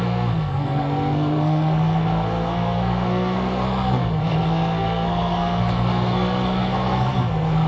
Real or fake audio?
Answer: fake